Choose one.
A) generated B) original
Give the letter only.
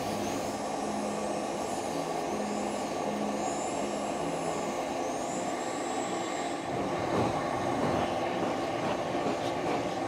B